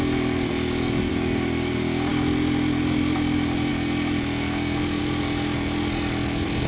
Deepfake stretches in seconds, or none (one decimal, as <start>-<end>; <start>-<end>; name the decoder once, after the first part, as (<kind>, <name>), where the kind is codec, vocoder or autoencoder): 1.1-2.1 (codec, DAC)